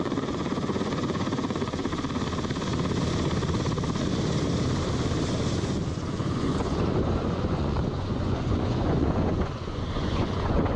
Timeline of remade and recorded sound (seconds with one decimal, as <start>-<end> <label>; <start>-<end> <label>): 0.0-1.9 remade; 1.9-5.9 recorded; 5.9-10.8 remade